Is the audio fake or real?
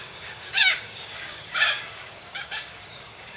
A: fake